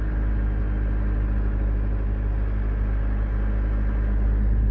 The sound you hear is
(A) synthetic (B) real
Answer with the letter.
B